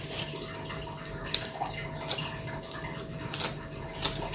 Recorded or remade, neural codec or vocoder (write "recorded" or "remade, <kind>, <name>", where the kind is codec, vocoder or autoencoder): recorded